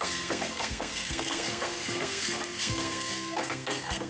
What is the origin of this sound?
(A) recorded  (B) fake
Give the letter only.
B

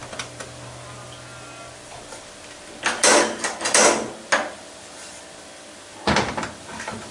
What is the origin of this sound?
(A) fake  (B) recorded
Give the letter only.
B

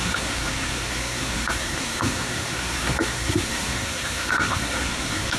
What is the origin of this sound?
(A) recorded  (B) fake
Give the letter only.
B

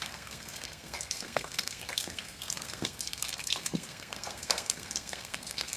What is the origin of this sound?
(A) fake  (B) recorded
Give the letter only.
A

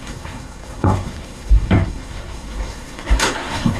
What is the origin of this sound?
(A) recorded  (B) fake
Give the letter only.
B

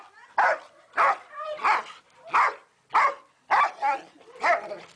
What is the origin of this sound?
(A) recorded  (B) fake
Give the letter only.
A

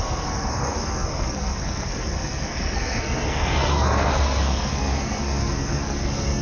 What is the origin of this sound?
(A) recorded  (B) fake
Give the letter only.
B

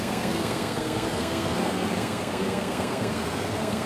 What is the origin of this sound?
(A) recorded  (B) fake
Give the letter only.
B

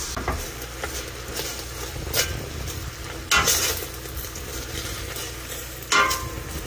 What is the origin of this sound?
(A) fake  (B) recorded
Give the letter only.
B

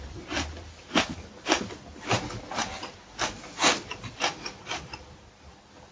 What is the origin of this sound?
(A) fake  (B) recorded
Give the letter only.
B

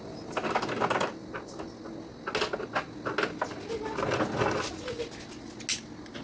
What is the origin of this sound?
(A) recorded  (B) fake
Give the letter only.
A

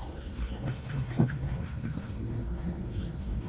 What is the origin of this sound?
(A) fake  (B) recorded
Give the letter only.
A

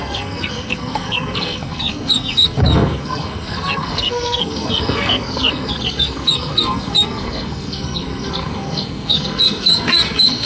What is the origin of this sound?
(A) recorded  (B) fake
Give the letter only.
B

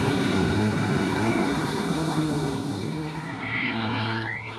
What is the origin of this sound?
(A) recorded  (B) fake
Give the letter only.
B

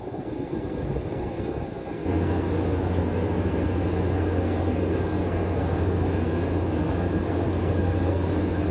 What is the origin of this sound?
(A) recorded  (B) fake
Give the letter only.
B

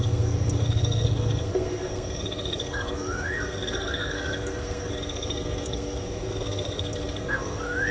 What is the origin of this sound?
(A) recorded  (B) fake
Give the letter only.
B